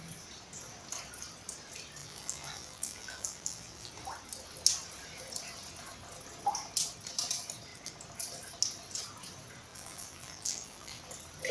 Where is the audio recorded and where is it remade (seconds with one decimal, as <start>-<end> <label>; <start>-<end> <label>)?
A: 0.0-2.0 recorded; 2.0-3.9 remade; 3.9-9.7 recorded; 9.7-11.0 remade; 11.0-11.5 recorded